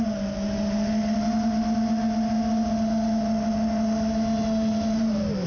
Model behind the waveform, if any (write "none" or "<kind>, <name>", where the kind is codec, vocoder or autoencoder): none